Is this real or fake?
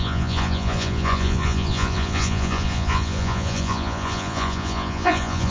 fake